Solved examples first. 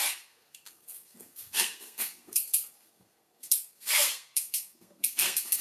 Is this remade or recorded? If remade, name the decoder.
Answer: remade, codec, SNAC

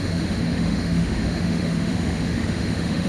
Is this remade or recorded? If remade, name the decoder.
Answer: remade, autoencoder, DAC-VAE